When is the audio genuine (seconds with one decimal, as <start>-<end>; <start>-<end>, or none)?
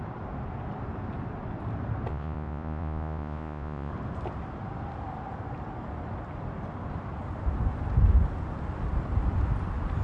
0.0-2.1; 3.9-10.0